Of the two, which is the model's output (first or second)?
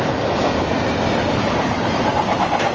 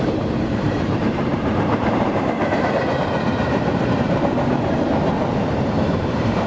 second